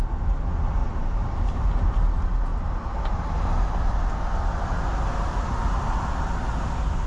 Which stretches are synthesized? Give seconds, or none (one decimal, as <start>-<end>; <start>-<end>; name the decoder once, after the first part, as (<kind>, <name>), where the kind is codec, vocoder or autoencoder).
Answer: none